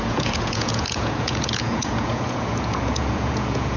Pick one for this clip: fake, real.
fake